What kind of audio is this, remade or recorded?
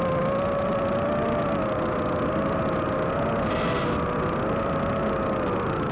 recorded